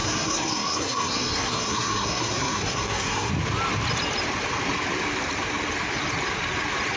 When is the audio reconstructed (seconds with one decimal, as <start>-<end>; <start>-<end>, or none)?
0.0-3.3